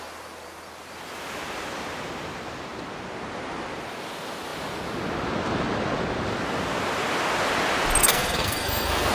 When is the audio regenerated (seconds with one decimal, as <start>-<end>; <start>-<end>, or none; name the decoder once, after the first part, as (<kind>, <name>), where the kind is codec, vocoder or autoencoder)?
8.0-9.1 (codec, SNAC)